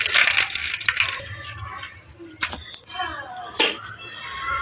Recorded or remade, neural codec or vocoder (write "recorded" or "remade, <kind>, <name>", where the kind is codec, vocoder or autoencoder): recorded